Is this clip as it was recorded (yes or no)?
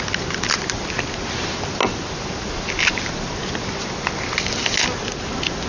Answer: yes